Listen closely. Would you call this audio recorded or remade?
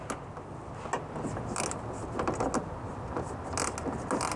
recorded